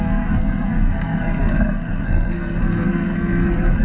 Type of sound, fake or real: fake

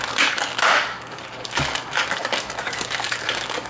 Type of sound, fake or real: fake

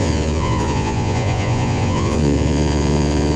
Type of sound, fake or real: fake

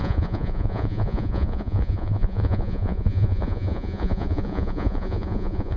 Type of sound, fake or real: fake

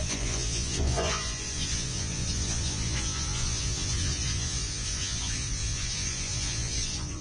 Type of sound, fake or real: fake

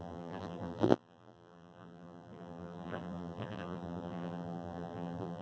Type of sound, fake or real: fake